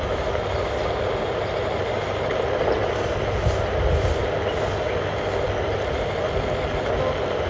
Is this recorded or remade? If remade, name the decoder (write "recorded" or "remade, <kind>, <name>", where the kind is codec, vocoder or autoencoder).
recorded